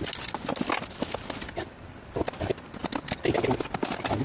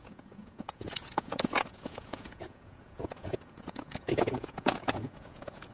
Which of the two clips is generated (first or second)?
second